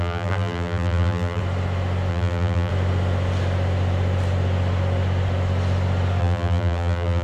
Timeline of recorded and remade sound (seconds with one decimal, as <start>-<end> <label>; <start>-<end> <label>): 0.0-1.4 remade; 1.4-2.1 recorded; 2.1-2.7 remade; 2.7-6.2 recorded; 6.2-7.2 remade